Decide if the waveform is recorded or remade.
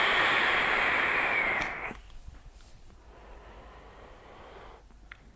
recorded